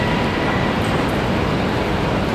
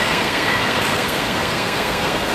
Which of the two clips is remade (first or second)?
second